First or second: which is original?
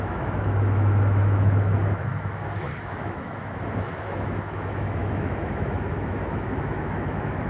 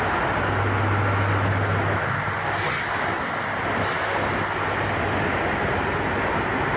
second